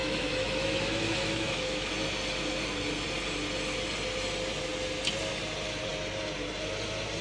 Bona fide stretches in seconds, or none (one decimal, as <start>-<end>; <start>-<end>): 1.9-7.2